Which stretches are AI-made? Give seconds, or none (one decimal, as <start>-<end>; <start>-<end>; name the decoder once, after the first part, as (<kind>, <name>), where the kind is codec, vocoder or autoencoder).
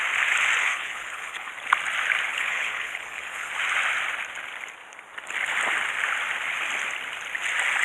0.6-1.5 (codec, HILCodec); 2.3-3.5